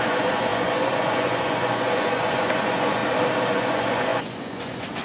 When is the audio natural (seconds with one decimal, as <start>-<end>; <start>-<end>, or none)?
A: 3.0-3.5